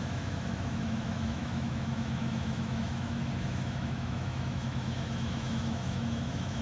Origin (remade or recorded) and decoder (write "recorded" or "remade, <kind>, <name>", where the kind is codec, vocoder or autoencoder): remade, autoencoder, DAC-VAE